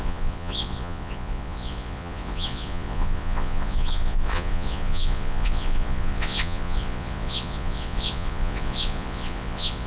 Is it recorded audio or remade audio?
remade